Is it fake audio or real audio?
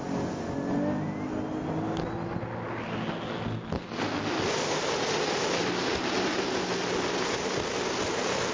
real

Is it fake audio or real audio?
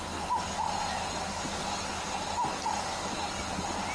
real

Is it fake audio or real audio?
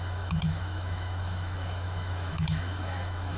fake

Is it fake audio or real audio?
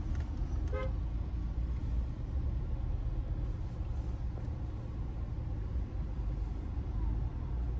real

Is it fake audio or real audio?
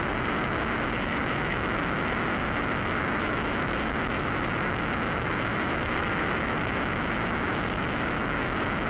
fake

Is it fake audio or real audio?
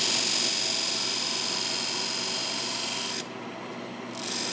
real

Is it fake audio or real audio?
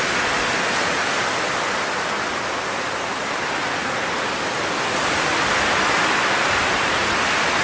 real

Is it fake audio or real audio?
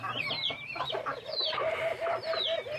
real